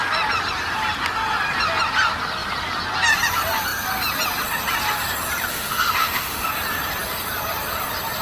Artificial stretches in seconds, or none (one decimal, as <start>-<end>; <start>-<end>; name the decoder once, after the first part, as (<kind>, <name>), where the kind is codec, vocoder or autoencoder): 5.5-6.5 (autoencoder, DAC-VAE)